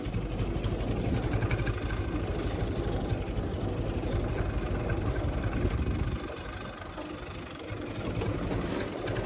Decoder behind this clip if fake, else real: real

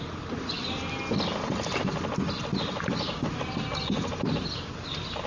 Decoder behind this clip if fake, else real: real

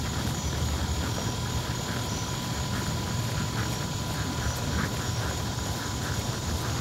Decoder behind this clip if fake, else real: real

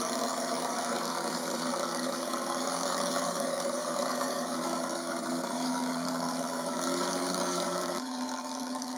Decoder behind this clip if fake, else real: fake, codec, DAC